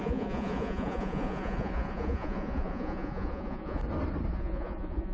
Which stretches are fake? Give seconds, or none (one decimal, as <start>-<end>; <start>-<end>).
0.0-3.8; 4.3-5.1